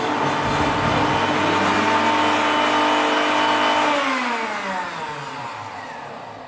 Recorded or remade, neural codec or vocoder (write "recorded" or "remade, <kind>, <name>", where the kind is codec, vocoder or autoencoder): recorded